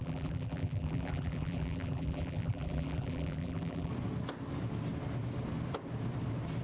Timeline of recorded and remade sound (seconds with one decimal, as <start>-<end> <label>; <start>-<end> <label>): 0.0-3.9 remade; 3.9-6.6 recorded